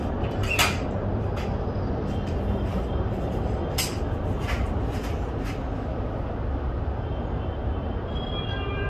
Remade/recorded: recorded